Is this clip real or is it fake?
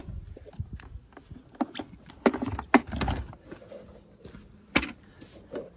real